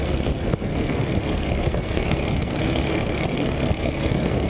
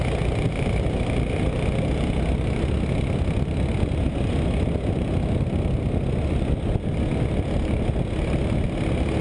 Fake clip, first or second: first